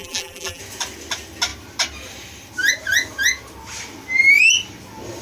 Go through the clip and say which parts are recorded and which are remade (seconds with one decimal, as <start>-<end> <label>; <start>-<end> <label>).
0.0-0.6 remade; 0.6-5.2 recorded